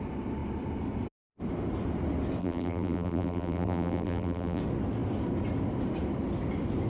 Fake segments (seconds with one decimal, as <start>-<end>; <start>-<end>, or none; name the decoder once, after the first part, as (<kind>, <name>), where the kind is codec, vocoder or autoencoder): 2.4-4.6 (vocoder, BigVGAN v2)